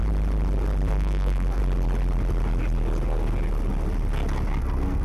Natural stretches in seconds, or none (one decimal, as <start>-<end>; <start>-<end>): 0.0-0.9; 1.6-4.6